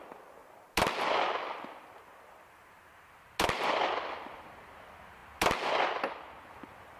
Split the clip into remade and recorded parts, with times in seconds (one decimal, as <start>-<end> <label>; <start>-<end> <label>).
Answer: 0.0-7.0 recorded